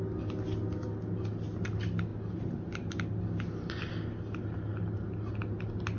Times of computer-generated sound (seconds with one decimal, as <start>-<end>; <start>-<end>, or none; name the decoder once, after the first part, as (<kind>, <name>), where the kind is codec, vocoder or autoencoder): none